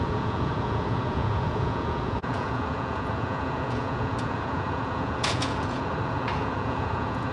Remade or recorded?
remade